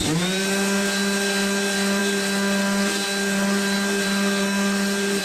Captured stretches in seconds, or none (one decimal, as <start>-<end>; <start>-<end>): 0.0-5.2